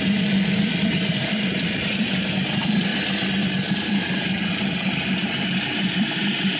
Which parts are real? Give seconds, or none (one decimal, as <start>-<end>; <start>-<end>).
2.9-4.5